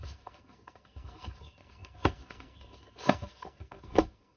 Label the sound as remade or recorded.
remade